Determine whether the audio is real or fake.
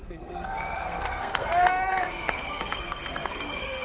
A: fake